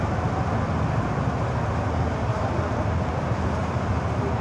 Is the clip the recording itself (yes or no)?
yes